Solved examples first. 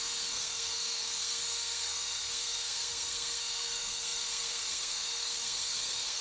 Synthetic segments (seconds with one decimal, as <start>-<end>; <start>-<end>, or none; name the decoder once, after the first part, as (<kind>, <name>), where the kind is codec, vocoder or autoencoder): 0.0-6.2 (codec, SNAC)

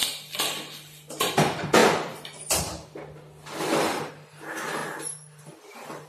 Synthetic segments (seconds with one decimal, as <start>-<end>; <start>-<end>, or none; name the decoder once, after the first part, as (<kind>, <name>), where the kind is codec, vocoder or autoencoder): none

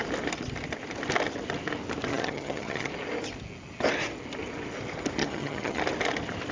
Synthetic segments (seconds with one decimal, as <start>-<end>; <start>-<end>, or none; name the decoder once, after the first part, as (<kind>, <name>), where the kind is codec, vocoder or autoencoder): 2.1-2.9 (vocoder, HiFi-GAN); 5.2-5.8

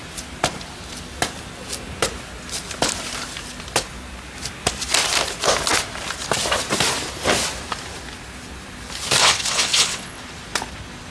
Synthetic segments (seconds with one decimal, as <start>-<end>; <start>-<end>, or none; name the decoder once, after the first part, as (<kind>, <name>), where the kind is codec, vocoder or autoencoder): 9.2-10.2 (vocoder, WaveNeXt)

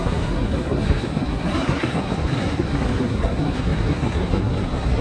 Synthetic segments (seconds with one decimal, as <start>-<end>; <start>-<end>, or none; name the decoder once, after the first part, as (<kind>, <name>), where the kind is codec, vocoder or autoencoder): 0.0-5.0 (codec, SNAC)

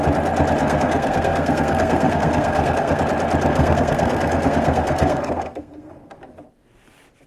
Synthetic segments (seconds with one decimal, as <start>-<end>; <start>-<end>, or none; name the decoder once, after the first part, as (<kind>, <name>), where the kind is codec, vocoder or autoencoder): 0.6-3.0 (codec, SNAC); 3.5-6.2

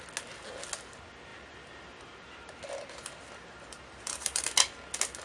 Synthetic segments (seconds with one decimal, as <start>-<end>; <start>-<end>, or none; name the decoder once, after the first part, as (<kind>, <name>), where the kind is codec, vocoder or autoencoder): 1.3-4.4 (vocoder, BigVGAN v2)

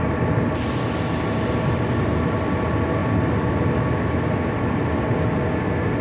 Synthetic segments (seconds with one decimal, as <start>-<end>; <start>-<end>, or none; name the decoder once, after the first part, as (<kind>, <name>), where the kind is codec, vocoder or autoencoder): none